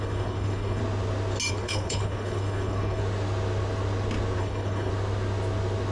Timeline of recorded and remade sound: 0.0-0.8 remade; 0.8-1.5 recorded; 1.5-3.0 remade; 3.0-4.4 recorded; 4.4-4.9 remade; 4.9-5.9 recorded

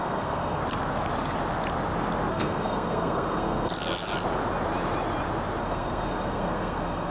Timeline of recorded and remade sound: 0.0-0.6 remade; 0.6-2.3 recorded; 2.3-3.7 remade; 3.7-5.6 recorded; 5.6-7.1 remade